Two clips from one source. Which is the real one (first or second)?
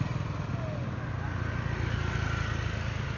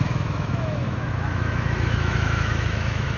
first